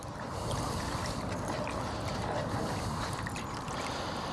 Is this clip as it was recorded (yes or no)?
yes